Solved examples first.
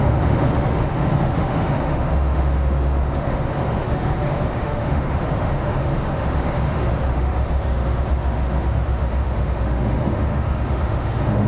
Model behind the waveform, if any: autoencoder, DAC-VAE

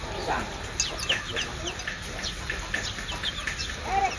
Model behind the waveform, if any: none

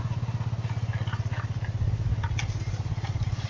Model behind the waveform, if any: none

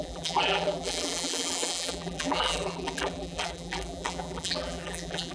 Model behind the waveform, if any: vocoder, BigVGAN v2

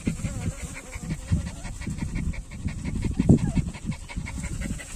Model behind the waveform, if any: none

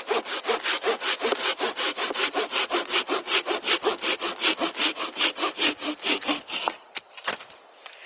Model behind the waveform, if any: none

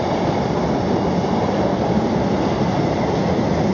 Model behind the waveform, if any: none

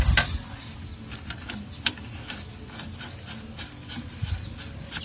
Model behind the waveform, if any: none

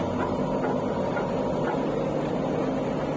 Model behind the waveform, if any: none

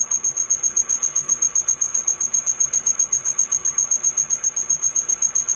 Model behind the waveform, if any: codec, HILCodec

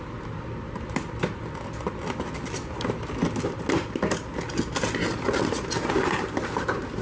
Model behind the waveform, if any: none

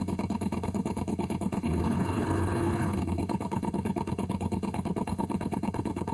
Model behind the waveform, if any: codec, HILCodec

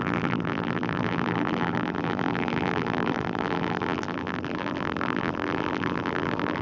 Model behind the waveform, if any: vocoder, BigVGAN v2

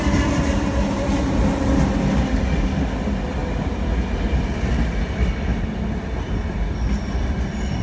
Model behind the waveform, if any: none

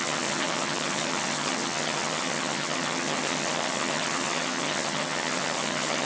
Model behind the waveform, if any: vocoder, HiFi-GAN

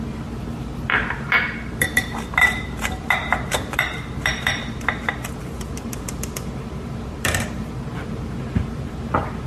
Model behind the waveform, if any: vocoder, BigVGAN v2